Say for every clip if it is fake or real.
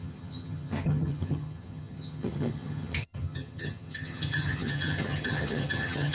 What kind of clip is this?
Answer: fake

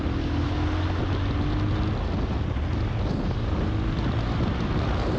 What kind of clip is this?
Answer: real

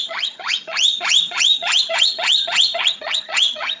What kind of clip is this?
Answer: fake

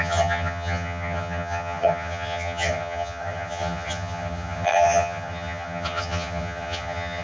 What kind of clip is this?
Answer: fake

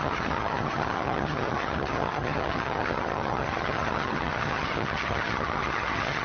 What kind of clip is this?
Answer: fake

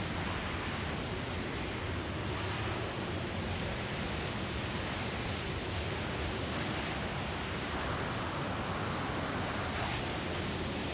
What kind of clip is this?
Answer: real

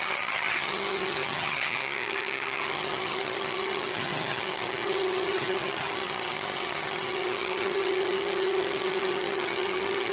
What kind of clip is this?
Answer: fake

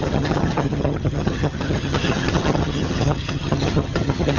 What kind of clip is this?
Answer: fake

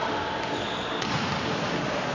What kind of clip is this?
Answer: real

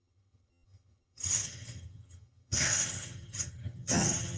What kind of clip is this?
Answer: fake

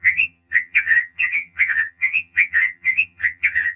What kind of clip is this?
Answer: fake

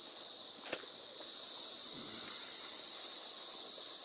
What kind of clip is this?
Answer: real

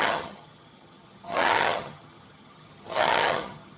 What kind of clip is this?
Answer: fake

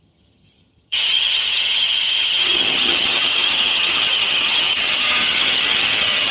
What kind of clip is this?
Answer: fake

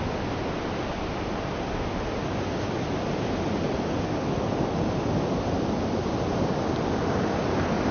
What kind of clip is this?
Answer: real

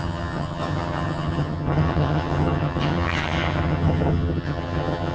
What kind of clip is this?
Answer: fake